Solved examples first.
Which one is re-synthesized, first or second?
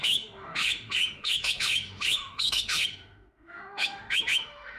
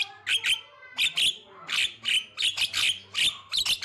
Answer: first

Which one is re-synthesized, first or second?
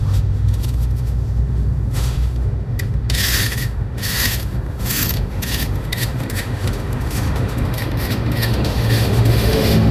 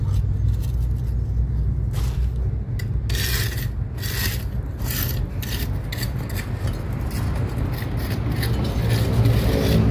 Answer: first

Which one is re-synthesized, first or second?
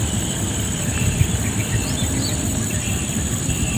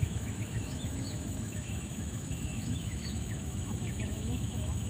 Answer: second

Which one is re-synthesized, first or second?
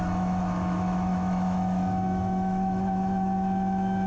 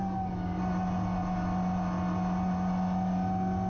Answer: first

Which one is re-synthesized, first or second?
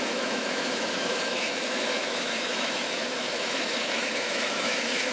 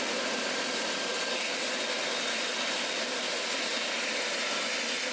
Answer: first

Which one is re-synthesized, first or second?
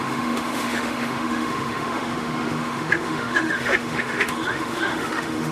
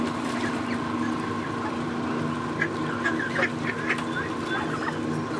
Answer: first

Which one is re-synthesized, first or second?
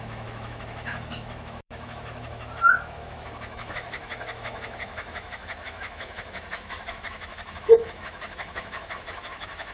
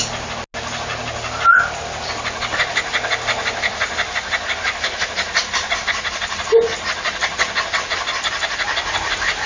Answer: first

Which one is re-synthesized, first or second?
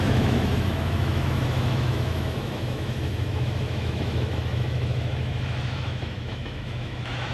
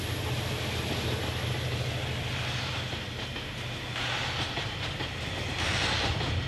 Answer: first